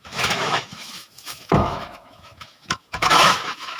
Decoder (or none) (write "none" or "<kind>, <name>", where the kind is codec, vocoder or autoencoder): autoencoder, DAC-VAE